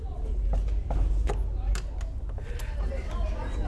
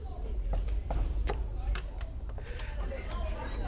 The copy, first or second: second